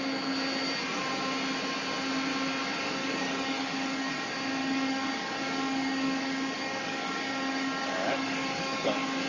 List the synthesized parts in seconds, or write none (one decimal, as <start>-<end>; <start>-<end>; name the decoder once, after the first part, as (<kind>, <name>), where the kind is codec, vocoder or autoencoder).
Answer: 3.0-4.1 (codec, DAC); 4.6-8.9